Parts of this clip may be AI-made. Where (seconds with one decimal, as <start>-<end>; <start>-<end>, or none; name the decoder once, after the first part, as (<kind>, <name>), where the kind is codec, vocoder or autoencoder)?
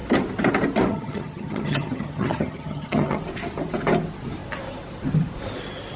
0.9-3.2 (vocoder, HiFi-GAN)